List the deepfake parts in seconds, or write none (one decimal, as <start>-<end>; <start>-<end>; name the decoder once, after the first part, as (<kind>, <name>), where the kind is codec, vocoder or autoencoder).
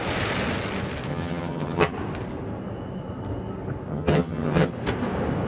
1.1-1.9 (vocoder, HiFi-GAN); 3.9-4.7